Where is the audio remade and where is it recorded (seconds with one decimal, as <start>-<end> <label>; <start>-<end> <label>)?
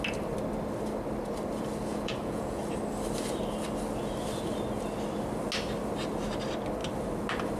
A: 0.0-1.9 recorded; 1.9-2.6 remade; 2.6-7.6 recorded